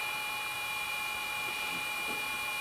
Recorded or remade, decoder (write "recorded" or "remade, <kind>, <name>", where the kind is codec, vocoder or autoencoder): remade, vocoder, BigVGAN v2